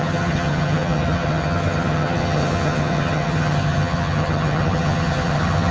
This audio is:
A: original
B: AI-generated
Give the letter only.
B